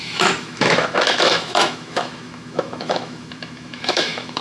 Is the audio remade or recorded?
remade